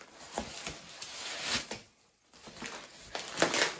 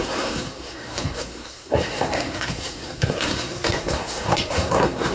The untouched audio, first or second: first